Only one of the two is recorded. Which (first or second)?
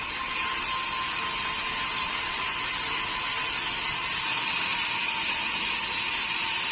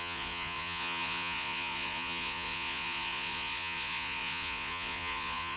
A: first